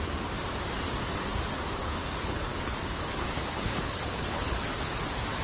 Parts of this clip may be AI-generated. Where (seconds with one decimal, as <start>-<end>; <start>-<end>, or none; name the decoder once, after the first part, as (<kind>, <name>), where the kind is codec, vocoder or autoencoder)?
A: 1.8-4.9 (codec, HILCodec)